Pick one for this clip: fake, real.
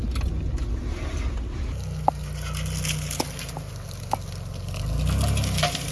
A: real